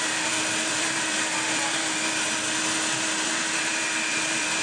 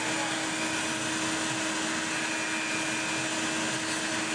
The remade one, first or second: first